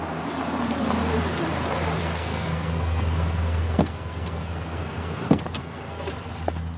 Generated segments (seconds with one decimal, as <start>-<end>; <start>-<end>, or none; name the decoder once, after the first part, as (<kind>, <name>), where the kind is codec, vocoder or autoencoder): 2.0-6.1 (codec, SNAC)